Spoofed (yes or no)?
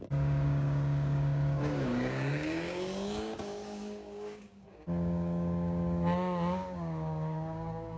yes